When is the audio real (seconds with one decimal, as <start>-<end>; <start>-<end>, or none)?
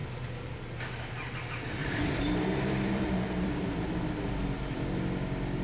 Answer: 0.0-1.8; 3.9-5.6